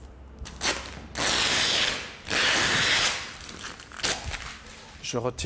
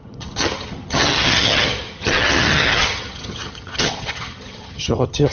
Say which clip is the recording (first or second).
first